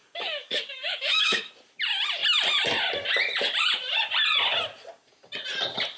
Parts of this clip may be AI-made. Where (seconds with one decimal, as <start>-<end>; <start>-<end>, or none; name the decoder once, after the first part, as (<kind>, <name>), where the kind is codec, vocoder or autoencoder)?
0.0-1.5 (codec, DAC)